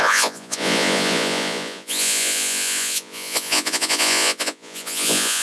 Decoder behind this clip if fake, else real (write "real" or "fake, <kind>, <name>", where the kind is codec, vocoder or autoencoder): fake, vocoder, Vocos